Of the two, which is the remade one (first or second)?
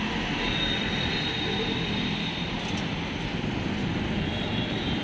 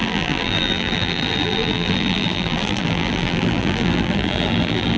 second